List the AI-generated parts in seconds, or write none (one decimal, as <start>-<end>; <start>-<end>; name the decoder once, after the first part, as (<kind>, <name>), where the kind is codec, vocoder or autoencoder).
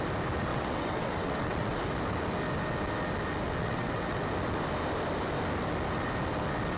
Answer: 0.5-1.8 (vocoder, WaveNeXt); 3.6-4.2